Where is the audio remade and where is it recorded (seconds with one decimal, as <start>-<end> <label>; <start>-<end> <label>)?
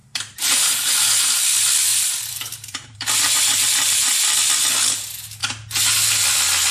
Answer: 0.0-1.3 remade; 1.3-1.9 recorded; 1.9-4.1 remade; 4.1-6.7 recorded